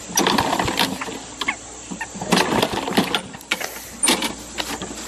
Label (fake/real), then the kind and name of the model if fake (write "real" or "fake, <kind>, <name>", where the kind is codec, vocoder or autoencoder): real